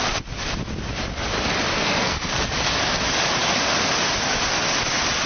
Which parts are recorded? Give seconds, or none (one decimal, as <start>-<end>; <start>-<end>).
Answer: 0.0-1.7; 2.4-5.3